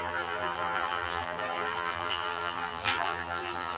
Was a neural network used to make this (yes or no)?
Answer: yes